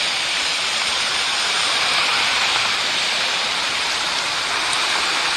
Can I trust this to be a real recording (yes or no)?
yes